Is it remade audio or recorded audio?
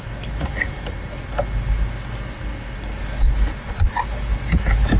recorded